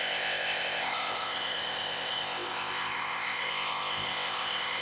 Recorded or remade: remade